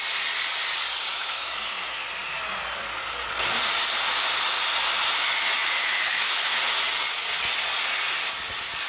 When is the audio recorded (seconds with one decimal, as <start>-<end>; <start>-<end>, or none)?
0.0-1.1; 1.7-5.8; 6.6-8.9